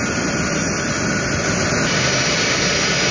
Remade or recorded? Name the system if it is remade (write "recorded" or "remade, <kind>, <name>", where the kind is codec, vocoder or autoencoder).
recorded